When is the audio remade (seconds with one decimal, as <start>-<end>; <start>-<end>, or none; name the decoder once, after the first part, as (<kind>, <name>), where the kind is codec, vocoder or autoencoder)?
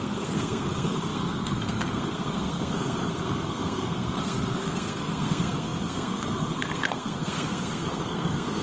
0.0-8.6 (codec, SNAC)